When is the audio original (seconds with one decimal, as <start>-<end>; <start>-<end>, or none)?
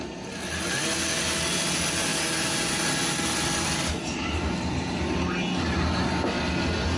0.0-7.0